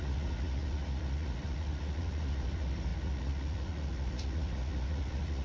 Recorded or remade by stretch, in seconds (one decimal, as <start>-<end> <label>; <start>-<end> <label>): 0.0-5.4 remade